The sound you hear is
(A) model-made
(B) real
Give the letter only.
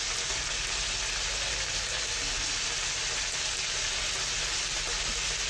B